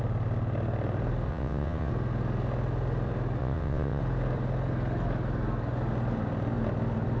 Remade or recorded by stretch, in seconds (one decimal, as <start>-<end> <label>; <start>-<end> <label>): 0.0-1.3 recorded; 1.3-1.9 remade; 1.9-3.4 recorded; 3.4-4.0 remade; 4.0-7.2 recorded